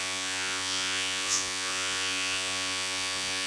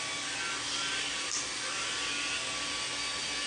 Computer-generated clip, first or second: first